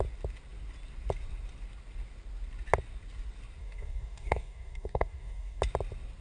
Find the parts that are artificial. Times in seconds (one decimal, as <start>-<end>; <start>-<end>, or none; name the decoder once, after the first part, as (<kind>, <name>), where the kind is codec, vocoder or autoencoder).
3.6-5.6 (codec, DAC)